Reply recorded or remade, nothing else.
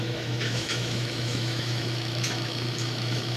remade